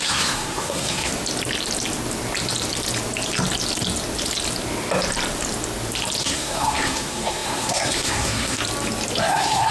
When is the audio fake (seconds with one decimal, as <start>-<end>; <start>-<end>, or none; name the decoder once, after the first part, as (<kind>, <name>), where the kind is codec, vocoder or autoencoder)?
0.0-1.1 (codec, SNAC); 6.2-8.6; 9.2-9.7